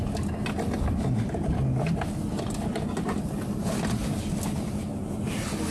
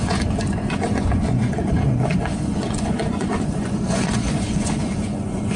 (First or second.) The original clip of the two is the first